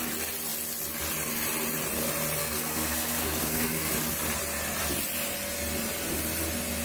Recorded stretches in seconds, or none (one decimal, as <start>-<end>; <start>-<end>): 0.0-2.4; 3.9-6.8